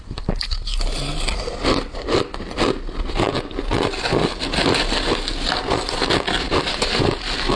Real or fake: real